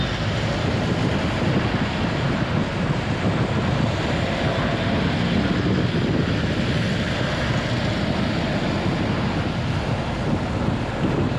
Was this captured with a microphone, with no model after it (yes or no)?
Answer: yes